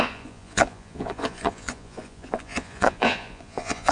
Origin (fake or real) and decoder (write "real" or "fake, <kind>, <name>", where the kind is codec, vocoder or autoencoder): fake, vocoder, Vocos